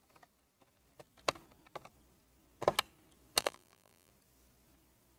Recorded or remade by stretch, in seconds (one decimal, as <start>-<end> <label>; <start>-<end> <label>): 0.0-3.4 recorded; 3.4-4.1 remade; 4.1-5.2 recorded